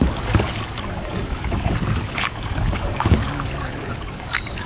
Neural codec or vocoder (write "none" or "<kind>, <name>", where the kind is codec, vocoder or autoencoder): codec, DAC